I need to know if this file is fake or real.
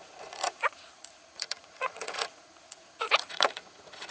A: fake